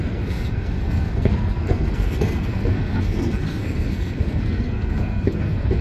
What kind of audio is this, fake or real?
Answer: fake